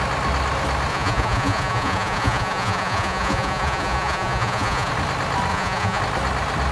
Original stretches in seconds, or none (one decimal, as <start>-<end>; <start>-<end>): 0.0-0.9; 4.9-5.5; 6.0-6.7